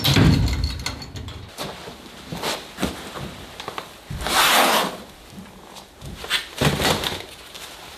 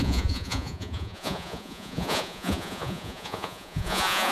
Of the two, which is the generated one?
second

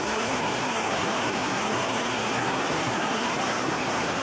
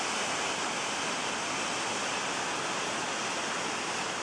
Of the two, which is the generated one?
first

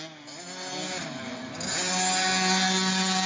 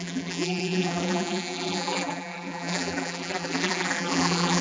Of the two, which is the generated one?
second